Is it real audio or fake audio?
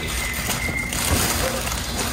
real